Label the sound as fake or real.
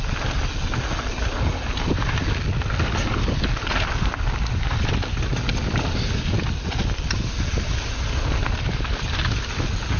real